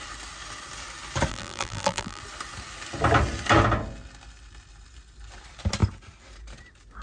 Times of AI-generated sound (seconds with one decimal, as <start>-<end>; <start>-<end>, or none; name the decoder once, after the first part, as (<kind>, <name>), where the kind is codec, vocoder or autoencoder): 1.3-2.2 (vocoder, BigVGAN v2)